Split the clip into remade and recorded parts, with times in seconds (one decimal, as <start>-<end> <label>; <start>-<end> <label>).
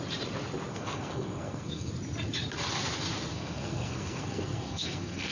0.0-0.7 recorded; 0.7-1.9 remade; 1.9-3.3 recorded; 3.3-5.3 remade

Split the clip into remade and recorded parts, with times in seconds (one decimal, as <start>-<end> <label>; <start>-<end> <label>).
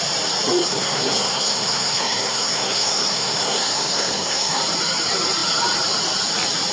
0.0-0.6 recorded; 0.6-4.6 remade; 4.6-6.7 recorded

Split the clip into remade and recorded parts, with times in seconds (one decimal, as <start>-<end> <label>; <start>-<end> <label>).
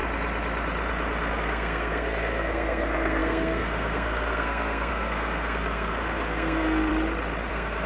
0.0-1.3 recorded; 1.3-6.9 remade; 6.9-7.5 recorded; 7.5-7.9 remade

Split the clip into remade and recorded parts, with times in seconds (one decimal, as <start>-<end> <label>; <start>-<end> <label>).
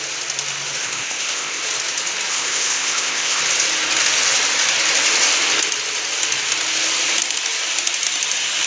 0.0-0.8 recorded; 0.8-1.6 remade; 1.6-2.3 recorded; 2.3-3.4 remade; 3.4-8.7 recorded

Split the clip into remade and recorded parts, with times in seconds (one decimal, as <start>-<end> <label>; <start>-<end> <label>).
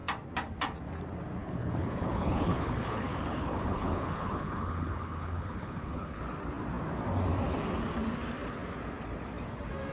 0.0-1.4 recorded; 1.4-6.2 remade; 6.2-9.9 recorded